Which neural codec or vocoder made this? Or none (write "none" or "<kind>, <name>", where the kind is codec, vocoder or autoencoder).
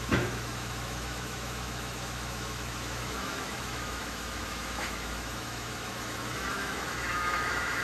autoencoder, DAC-VAE